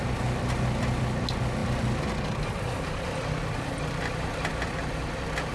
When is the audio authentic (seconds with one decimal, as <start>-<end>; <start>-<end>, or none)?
0.0-1.6; 3.8-5.5

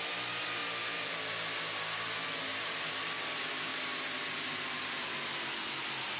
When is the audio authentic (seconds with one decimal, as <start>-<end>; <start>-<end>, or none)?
0.0-6.2

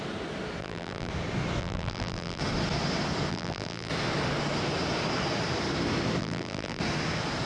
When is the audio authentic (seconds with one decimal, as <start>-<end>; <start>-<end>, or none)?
0.0-0.6; 1.1-1.6; 2.4-3.3; 3.9-6.2; 6.8-7.5

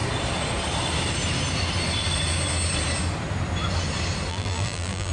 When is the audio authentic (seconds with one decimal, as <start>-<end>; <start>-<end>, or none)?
0.0-4.3

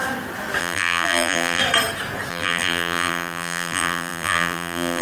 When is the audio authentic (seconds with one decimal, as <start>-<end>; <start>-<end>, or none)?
0.0-0.6; 1.6-2.3